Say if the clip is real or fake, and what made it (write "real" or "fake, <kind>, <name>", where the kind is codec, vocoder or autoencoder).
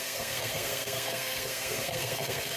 fake, codec, SNAC